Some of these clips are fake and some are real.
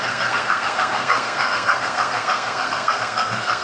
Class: fake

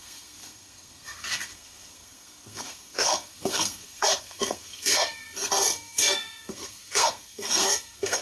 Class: fake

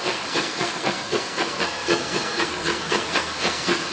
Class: fake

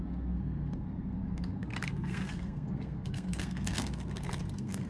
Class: fake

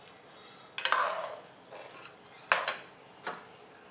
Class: real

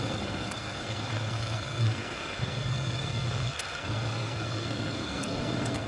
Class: fake